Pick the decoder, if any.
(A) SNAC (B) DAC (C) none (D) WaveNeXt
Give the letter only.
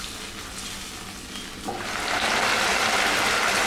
C